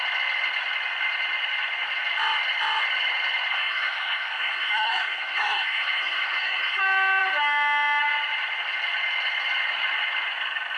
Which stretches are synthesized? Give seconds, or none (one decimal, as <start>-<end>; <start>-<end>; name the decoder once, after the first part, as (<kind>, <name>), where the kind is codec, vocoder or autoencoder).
3.5-6.8 (codec, SNAC)